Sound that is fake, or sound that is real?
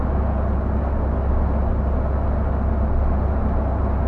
real